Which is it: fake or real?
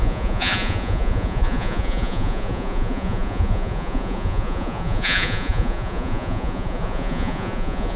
fake